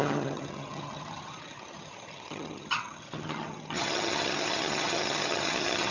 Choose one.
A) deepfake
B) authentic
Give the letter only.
A